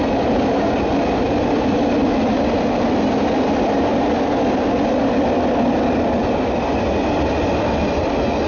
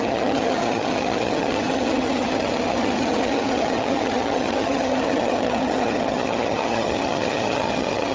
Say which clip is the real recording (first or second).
first